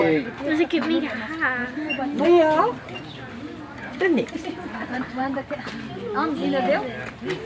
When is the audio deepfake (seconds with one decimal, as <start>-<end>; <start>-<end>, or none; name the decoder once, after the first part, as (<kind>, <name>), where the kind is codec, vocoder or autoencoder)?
1.6-2.6 (vocoder, BigVGAN v2); 3.7-5.6